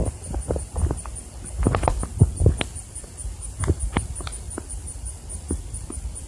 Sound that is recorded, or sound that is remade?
recorded